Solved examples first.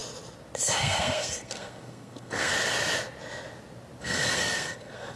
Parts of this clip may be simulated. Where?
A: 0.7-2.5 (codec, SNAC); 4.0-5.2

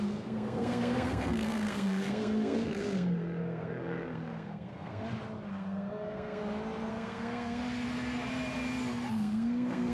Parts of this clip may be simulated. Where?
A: 0.0-5.0 (codec, SNAC); 5.5-6.4; 6.9-7.6; 9.1-9.9

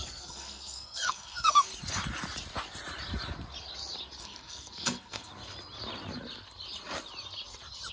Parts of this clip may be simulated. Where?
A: 0.0-1.7 (codec, SNAC); 4.2-5.3

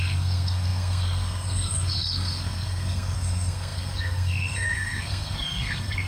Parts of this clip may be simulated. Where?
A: 0.0-6.1 (codec, SNAC)